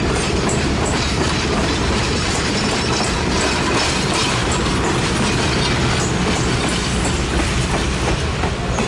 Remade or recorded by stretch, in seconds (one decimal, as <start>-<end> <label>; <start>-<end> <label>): 0.0-4.4 remade; 4.4-7.4 recorded; 7.4-8.9 remade